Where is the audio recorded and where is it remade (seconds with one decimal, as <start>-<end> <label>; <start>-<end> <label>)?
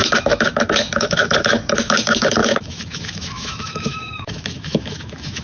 0.0-5.4 remade